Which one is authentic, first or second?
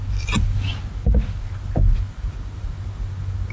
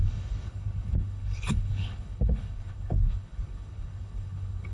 first